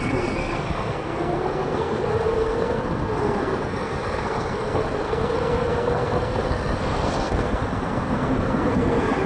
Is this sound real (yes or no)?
no